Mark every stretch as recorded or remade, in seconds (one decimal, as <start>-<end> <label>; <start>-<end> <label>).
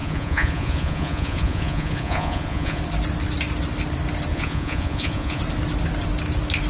0.0-2.8 remade; 2.8-4.3 recorded; 4.3-5.4 remade; 5.4-6.7 recorded